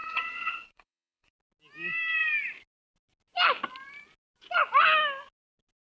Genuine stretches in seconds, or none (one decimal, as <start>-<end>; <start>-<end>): 1.3-5.9